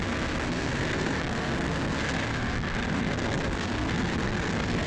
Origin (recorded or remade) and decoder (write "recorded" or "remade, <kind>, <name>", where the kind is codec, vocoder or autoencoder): remade, codec, SNAC